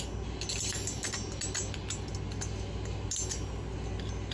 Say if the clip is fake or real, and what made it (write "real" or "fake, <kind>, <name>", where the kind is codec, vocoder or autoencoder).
real